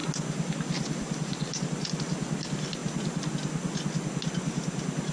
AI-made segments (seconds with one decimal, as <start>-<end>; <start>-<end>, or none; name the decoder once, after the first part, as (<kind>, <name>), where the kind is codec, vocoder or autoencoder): none